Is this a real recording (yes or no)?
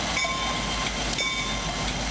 yes